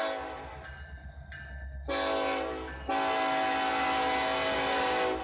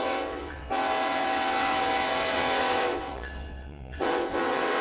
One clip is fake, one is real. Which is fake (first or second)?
second